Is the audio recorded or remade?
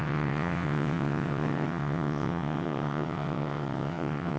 remade